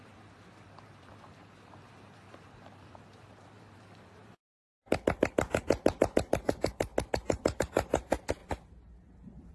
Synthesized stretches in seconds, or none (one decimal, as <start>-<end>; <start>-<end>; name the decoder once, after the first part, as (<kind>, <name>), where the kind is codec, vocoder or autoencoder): 0.0-6.9 (vocoder, BigVGAN v2); 7.6-8.4